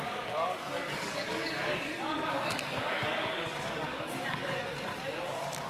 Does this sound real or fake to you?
fake